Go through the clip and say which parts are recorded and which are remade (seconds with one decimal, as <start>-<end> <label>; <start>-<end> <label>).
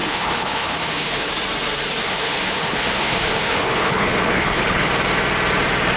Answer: 0.0-1.3 remade; 1.3-2.0 recorded; 2.0-4.9 remade; 4.9-6.0 recorded